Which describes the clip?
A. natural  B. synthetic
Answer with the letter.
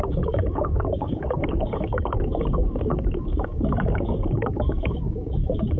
B